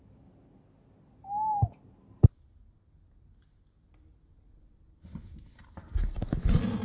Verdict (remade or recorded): recorded